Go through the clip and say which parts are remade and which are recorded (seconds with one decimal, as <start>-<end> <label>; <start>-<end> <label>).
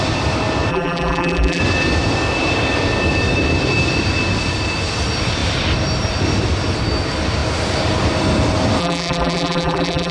0.0-0.7 recorded; 0.7-1.6 remade; 1.6-8.8 recorded; 8.8-10.1 remade